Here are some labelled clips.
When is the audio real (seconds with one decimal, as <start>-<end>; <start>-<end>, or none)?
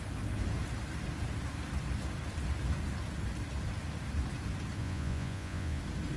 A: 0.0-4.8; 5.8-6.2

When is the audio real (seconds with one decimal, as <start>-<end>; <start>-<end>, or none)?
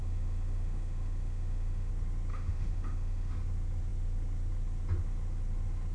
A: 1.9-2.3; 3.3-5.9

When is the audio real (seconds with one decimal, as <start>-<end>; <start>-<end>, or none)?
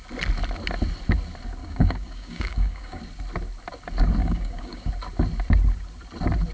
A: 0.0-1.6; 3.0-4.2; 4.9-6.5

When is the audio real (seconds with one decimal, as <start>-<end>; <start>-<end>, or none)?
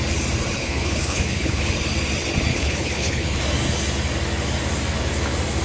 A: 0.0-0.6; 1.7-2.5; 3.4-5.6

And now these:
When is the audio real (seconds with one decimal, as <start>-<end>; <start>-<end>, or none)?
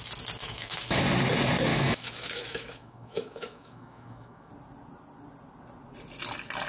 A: 0.0-0.4; 1.0-1.7; 4.5-6.7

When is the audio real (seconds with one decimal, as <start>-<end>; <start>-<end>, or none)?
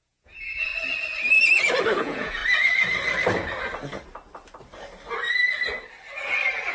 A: 0.7-2.0; 2.4-6.7